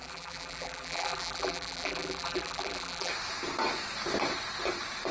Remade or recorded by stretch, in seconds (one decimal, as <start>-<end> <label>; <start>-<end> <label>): 0.0-3.1 remade; 3.1-5.1 recorded